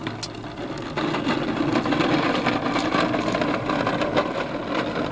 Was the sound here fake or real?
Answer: real